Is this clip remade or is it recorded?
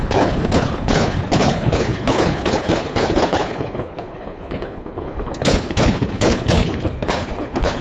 remade